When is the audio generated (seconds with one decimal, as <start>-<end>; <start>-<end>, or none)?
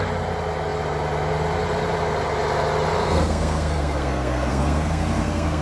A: 3.0-5.6